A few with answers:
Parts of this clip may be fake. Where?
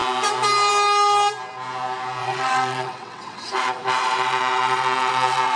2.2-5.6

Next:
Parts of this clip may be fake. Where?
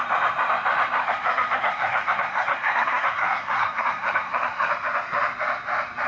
1.0-4.7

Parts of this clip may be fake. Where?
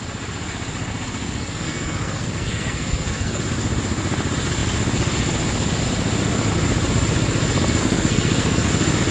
1.2-3.4; 7.8-8.7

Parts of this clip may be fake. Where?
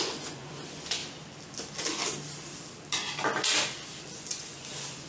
0.0-1.0; 4.1-5.1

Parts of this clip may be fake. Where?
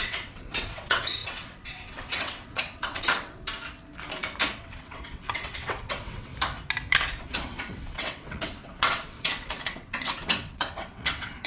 0.0-3.4; 4.6-6.3; 7.2-11.5